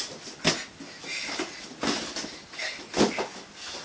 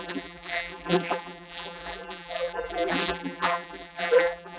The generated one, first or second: second